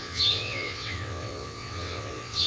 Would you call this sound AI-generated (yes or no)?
yes